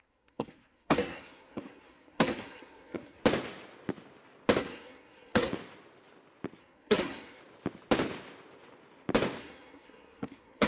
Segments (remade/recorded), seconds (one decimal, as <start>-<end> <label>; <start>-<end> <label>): 0.0-3.2 remade; 3.2-4.6 recorded; 4.6-5.5 remade; 5.5-6.6 recorded; 6.6-7.4 remade; 7.4-9.4 recorded; 9.4-10.7 remade